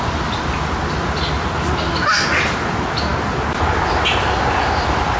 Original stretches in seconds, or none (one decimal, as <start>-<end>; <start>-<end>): 0.0-5.2